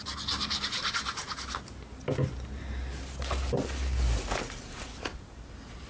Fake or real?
real